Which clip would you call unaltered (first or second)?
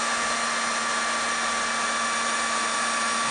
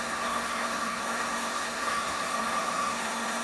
first